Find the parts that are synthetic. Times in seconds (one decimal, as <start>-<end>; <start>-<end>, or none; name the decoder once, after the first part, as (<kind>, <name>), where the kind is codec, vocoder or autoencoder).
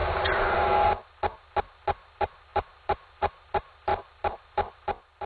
2.5-3.4 (vocoder, BigVGAN v2); 3.9-4.8